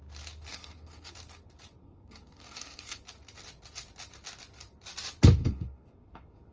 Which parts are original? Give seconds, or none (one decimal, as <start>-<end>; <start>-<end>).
0.0-0.5; 1.1-1.8; 3.0-5.4